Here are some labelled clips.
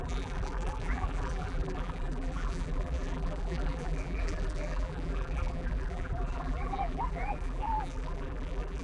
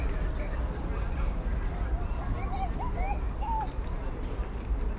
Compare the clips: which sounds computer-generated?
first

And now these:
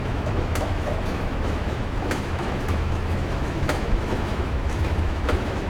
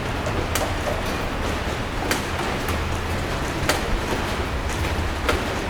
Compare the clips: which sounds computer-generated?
first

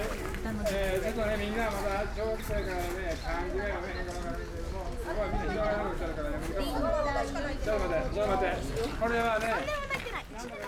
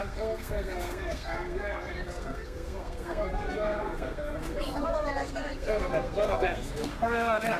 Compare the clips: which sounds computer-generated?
second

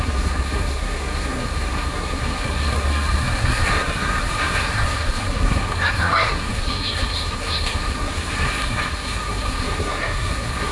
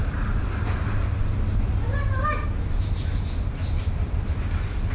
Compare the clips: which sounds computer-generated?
first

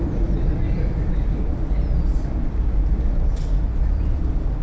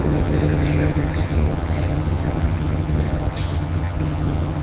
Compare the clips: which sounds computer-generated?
second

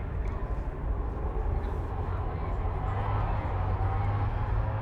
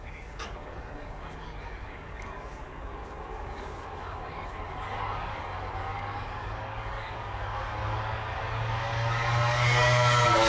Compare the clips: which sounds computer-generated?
second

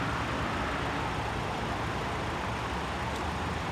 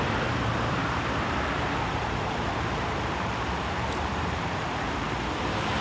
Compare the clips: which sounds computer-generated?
second